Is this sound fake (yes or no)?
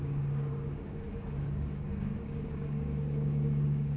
yes